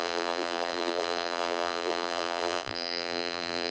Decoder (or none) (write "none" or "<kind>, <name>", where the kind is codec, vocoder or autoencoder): vocoder, BigVGAN v2